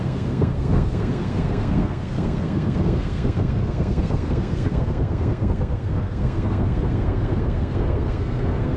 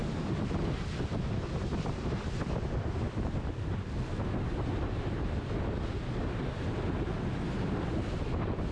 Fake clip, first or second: first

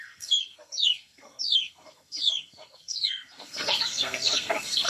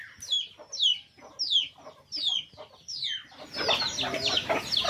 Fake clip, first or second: first